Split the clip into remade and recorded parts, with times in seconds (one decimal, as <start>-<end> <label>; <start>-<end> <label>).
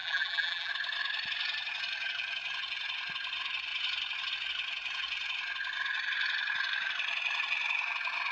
0.0-0.7 remade; 0.7-8.3 recorded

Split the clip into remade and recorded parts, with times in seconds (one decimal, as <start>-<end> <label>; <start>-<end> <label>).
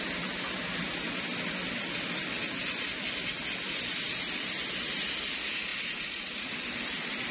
0.0-7.3 recorded